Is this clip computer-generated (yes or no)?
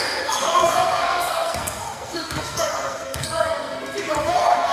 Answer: yes